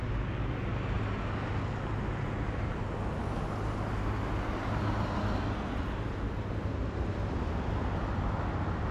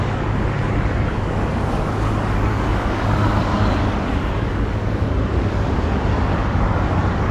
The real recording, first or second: first